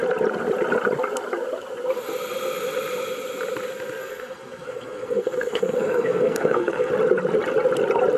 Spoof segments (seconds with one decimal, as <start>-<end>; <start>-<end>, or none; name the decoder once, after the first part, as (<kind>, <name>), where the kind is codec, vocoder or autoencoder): 4.0-6.9 (codec, SNAC)